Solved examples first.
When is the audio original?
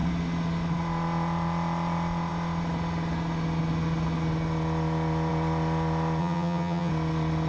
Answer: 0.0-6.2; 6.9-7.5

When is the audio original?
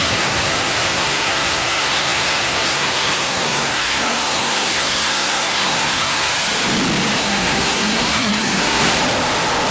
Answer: 6.3-7.2; 9.0-9.7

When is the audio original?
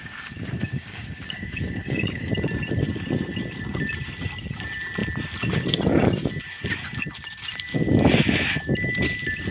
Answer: 2.3-9.5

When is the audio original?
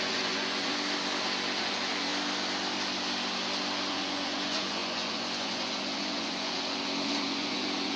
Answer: 0.7-1.6; 2.1-3.9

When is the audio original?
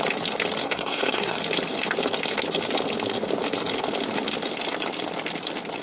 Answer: 0.0-0.6; 1.4-5.8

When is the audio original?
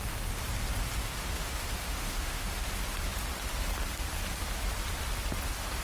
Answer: 0.0-1.2; 2.7-5.8